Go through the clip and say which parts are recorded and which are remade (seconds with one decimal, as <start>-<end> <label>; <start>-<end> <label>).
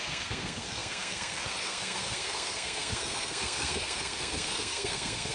0.0-5.3 remade